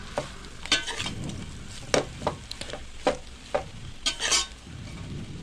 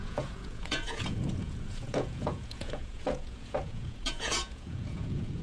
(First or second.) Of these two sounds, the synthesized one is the second